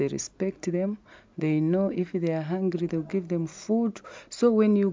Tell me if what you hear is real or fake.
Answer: real